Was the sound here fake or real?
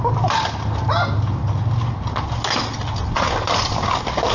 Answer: real